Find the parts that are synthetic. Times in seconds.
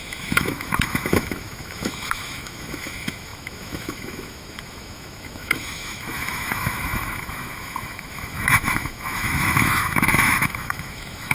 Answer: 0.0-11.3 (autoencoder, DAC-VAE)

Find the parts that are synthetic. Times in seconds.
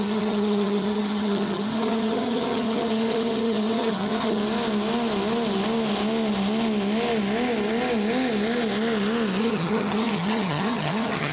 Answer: 0.0-4.4 (vocoder, HiFi-GAN); 9.4-11.3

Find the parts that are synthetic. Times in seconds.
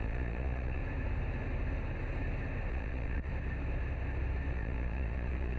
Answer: 0.0-0.8 (vocoder, Vocos); 2.7-3.3; 4.5-5.6